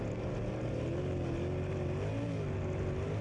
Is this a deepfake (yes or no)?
no